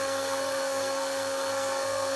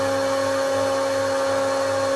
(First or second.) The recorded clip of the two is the second